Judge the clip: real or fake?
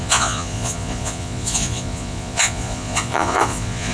fake